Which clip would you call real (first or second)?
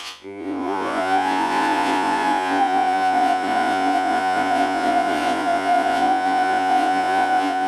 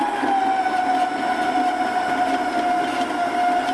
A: second